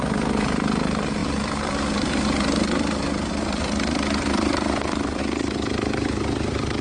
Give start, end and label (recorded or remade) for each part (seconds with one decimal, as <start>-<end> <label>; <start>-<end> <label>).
0.0-1.2 recorded; 1.2-5.2 remade; 5.2-6.8 recorded